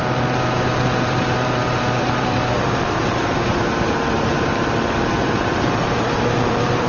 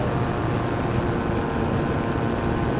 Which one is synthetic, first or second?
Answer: first